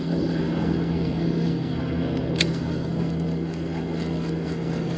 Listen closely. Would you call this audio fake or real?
fake